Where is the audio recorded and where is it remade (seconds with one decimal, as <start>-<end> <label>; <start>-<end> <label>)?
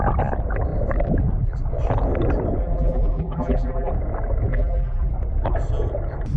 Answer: 0.0-2.6 recorded; 2.6-3.9 remade; 3.9-4.5 recorded; 4.5-5.1 remade; 5.1-6.4 recorded